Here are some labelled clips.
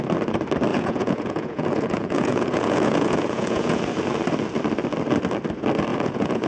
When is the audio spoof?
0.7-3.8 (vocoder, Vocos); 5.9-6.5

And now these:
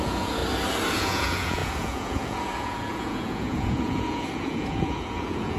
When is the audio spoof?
0.0-0.4 (vocoder, Vocos); 0.9-5.6

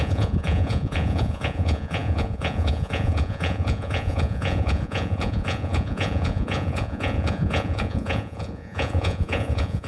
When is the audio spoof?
0.0-9.9 (vocoder, Vocos)

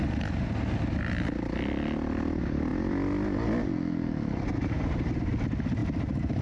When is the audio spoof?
none

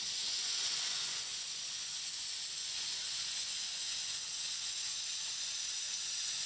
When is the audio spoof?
0.0-6.5 (vocoder, Vocos)

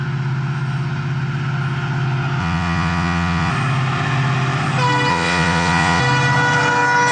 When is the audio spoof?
2.4-3.5 (vocoder, Vocos); 5.1-6.0